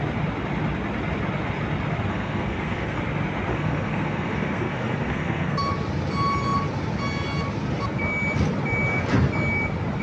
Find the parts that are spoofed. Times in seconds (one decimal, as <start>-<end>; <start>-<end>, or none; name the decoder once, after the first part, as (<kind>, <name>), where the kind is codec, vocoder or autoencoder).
2.1-3.0 (codec, SNAC); 3.5-5.6